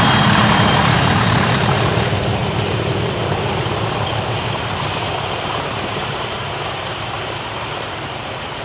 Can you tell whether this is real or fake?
real